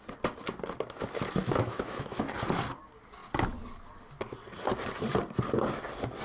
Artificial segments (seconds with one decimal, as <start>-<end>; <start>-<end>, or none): 1.4-2.2